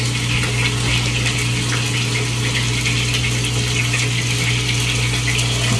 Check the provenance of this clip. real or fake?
real